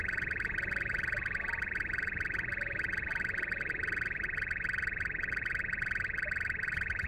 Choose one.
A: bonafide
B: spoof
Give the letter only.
B